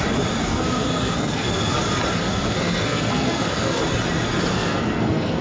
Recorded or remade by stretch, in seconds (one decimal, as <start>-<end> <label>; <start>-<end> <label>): 0.0-0.4 recorded; 0.4-1.8 remade; 1.8-2.2 recorded; 2.2-3.8 remade; 3.8-4.5 recorded; 4.5-5.4 remade